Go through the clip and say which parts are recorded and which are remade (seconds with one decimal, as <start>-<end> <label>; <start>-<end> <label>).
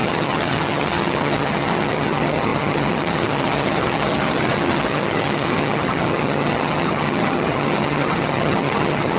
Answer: 0.0-9.2 remade